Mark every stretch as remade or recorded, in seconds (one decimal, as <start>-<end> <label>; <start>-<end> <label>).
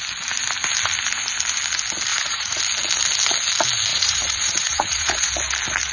0.0-2.1 recorded; 2.1-2.6 remade; 2.6-3.9 recorded; 3.9-5.3 remade; 5.3-5.9 recorded